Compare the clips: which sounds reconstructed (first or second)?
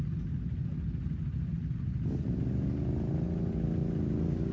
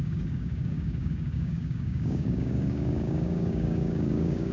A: second